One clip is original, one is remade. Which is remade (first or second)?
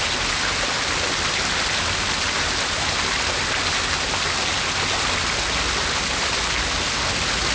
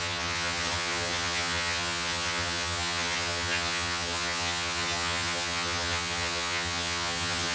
second